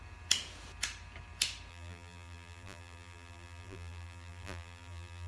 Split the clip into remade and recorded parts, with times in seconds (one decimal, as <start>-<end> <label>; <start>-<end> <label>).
0.0-1.7 recorded; 1.7-5.3 remade